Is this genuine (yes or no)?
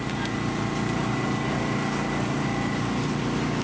yes